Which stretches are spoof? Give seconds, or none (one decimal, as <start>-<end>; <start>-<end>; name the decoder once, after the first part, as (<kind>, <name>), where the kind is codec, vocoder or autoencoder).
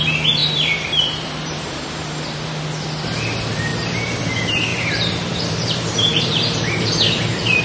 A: 0.4-2.6 (vocoder, BigVGAN v2); 3.7-4.2; 4.7-7.6